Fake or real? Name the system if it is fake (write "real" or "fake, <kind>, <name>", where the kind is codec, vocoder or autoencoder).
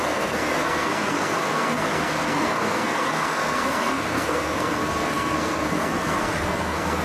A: fake, codec, SNAC